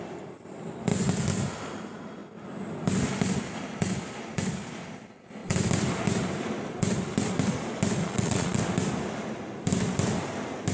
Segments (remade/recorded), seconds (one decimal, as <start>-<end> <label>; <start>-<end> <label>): 0.0-8.0 recorded; 8.0-8.6 remade; 8.6-10.7 recorded